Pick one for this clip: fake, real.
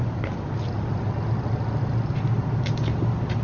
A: real